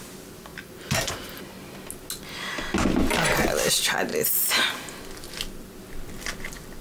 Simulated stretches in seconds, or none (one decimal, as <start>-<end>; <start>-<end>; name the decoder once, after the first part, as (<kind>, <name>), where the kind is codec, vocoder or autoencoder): 0.5-1.1 (vocoder, BigVGAN v2)